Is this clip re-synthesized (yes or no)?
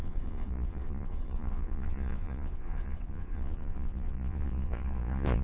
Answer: yes